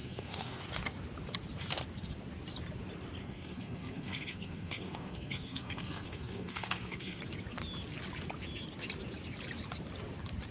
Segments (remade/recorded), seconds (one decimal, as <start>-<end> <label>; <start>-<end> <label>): 0.0-0.6 remade; 0.6-3.2 recorded; 3.2-7.2 remade; 7.2-10.5 recorded